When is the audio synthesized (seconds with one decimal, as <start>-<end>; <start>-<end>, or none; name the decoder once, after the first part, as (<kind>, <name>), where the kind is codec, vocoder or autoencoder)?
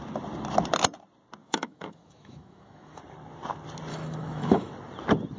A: 1.4-3.0 (autoencoder, DAC-VAE); 3.9-4.7